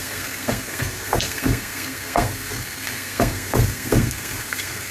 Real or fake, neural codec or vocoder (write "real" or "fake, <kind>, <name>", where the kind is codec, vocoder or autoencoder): fake, codec, SNAC